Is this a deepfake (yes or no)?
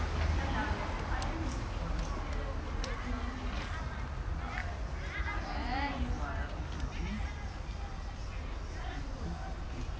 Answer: no